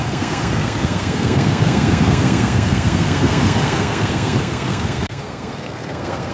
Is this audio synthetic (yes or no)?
yes